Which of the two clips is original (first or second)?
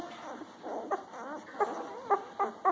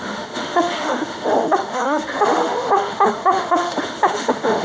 first